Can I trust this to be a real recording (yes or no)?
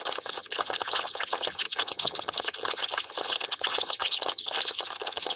no